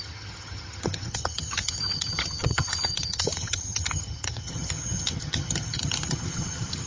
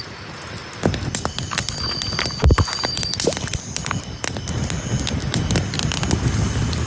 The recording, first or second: second